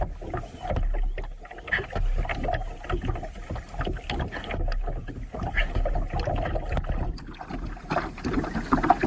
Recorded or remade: recorded